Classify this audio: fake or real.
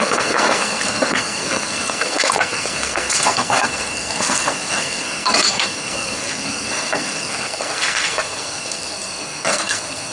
fake